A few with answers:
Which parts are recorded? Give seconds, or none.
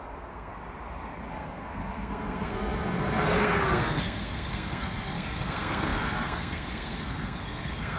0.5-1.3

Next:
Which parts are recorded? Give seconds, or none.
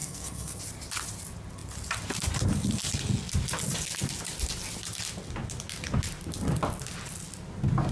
0.6-7.9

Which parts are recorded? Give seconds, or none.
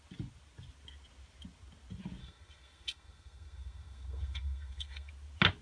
0.0-2.2; 5.1-5.6